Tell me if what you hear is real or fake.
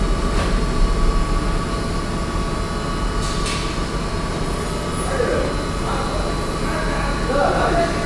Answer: real